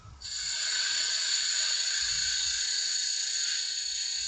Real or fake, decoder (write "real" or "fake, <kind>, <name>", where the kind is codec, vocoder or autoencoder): fake, vocoder, WaveNeXt